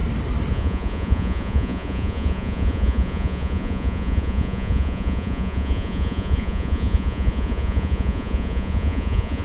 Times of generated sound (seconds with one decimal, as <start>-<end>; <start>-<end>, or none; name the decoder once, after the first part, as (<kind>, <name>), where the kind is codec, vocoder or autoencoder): 0.5-9.4 (vocoder, Vocos)